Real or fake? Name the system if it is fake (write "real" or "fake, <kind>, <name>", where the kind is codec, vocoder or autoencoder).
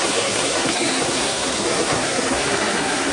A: fake, codec, SNAC